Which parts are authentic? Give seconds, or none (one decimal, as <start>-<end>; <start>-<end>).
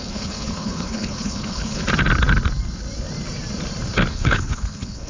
1.8-4.1